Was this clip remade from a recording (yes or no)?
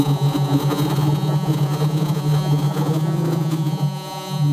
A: yes